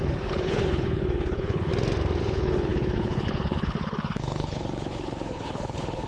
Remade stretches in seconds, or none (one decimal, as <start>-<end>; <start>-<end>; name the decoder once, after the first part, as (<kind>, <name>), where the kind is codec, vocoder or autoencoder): 0.0-1.7 (codec, HILCodec); 2.2-6.1